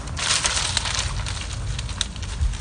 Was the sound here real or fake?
real